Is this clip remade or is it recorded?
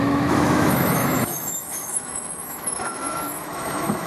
remade